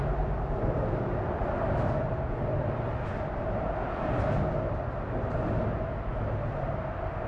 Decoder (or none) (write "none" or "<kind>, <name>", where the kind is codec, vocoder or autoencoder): none